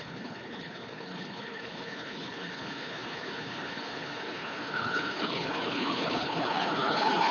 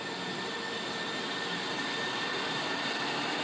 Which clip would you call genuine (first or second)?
second